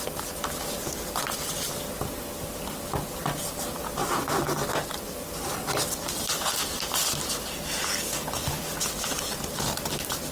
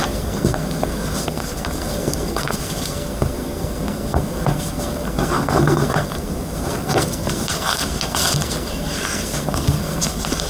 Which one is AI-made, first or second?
second